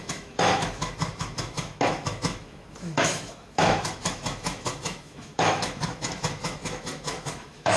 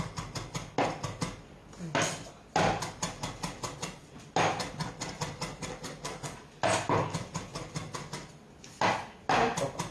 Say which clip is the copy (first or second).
first